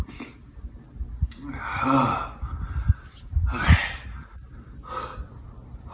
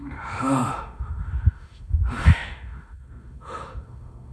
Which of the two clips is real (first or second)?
first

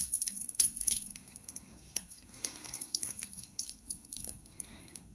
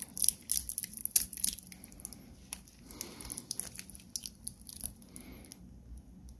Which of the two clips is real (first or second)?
second